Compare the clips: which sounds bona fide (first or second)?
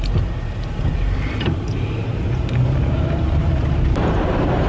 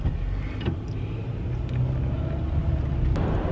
second